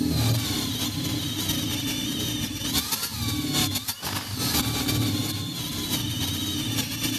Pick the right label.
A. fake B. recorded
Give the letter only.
B